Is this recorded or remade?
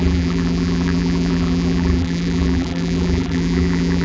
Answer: remade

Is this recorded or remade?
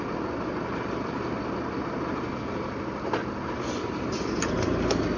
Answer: recorded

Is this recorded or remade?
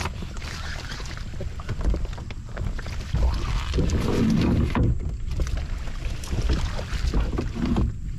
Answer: remade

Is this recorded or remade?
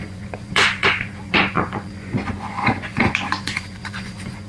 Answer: remade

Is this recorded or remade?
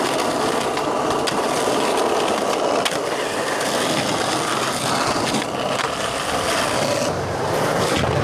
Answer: recorded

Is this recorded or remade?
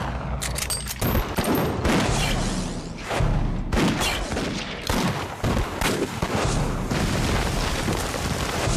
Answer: recorded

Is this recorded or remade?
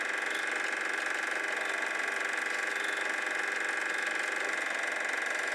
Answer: recorded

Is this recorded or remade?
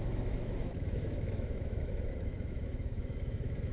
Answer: remade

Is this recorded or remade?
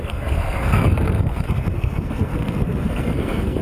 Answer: remade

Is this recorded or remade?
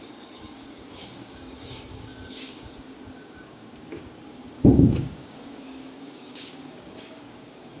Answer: remade